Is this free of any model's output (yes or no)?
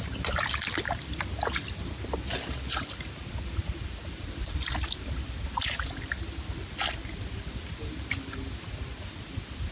yes